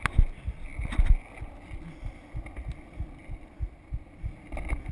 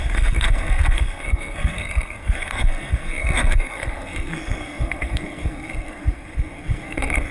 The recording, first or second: first